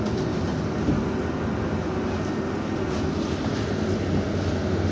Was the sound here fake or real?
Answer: real